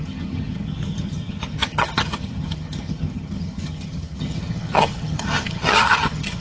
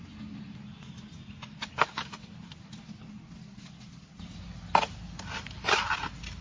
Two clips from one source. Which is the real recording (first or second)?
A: second